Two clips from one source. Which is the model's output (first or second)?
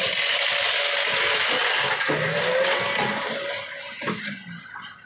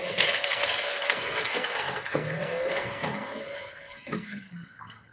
second